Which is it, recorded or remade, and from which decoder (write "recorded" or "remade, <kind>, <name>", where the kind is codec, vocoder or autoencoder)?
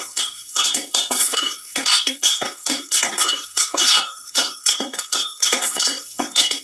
remade, codec, SNAC